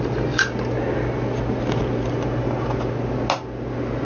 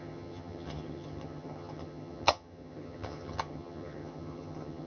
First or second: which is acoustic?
first